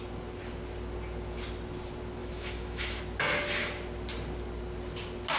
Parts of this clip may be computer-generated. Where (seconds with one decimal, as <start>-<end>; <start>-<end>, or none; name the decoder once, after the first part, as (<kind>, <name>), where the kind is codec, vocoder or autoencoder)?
2.2-3.0 (autoencoder, DAC-VAE)